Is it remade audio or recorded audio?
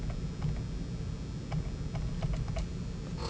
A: recorded